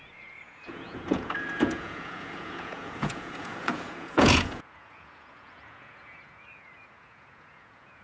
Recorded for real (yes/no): no